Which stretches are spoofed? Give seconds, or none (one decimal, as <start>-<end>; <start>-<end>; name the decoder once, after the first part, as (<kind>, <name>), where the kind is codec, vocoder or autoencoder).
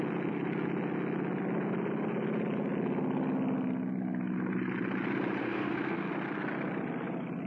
5.4-6.1 (codec, SNAC)